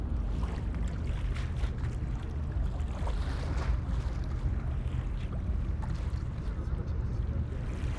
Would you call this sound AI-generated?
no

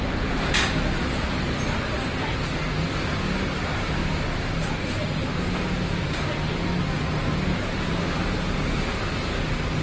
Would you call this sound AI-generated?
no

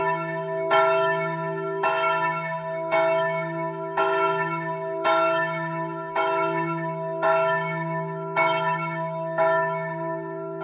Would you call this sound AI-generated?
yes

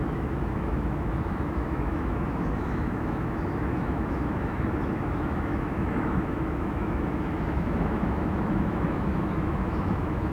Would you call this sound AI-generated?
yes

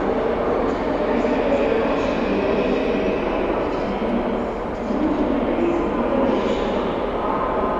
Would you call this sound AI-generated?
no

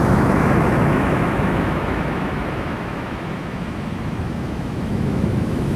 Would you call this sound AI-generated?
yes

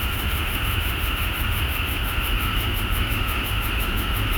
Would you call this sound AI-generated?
yes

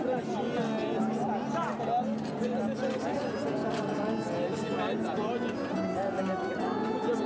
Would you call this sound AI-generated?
no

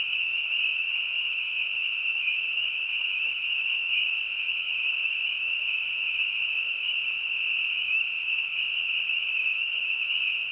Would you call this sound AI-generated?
yes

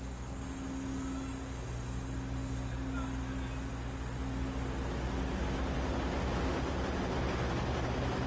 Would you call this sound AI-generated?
no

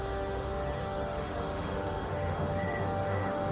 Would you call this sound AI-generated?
yes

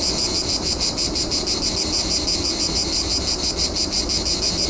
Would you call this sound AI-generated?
no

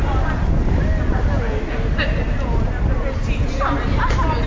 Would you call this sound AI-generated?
no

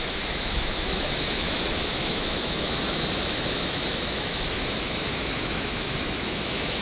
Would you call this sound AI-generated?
yes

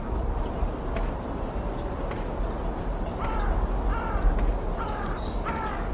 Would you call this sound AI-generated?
no